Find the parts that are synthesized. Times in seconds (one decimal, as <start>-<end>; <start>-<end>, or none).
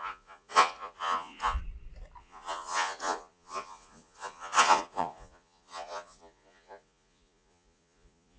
0.0-1.6; 2.2-8.4